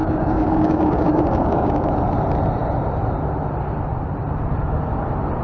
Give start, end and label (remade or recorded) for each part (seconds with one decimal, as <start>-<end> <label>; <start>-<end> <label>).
0.0-1.9 remade; 1.9-5.4 recorded